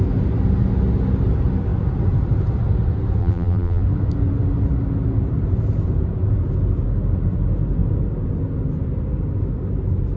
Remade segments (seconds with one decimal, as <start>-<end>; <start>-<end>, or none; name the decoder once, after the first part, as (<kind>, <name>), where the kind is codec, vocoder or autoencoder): 3.2-3.8 (vocoder, BigVGAN v2)